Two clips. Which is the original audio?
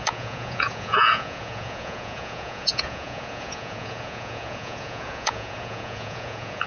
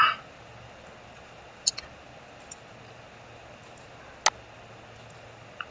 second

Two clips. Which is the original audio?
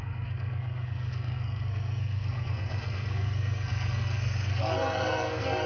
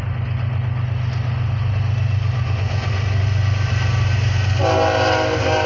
second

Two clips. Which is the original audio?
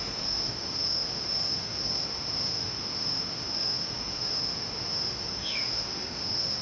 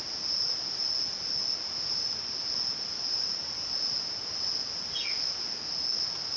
second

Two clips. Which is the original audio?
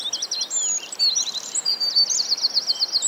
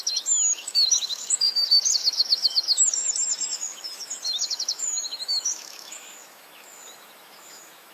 first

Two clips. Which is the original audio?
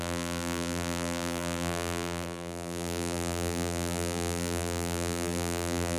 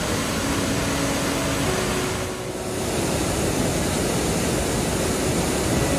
second